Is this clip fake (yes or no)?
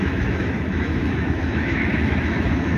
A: yes